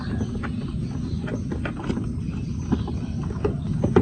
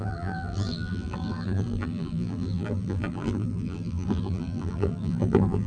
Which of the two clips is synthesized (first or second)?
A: second